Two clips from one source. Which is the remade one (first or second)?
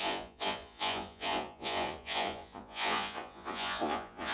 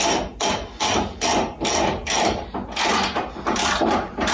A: first